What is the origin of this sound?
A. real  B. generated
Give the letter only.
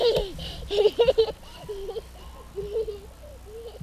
A